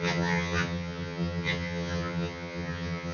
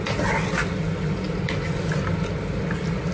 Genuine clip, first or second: second